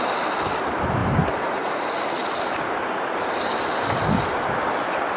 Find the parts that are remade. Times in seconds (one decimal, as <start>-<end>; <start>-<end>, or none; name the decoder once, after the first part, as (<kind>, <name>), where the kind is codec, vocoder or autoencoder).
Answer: 1.0-1.8 (vocoder, BigVGAN v2)